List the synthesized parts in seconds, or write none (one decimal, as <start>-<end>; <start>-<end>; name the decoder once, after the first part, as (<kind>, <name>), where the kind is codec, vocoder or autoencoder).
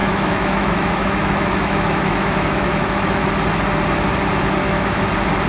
0.0-3.3 (autoencoder, DAC-VAE); 4.6-5.1